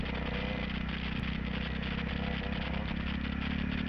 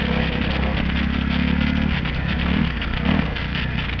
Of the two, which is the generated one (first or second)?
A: second